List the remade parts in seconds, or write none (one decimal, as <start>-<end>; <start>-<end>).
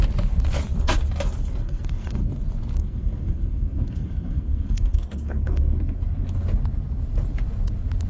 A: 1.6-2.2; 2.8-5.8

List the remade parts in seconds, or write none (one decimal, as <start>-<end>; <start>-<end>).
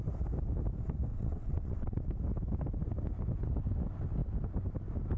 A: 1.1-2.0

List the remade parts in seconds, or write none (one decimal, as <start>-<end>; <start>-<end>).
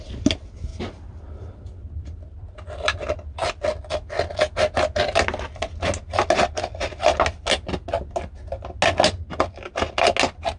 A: 0.7-3.8